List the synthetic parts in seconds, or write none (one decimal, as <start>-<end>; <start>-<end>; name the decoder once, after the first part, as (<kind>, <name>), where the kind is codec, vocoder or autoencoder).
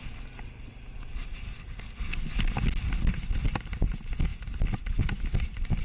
none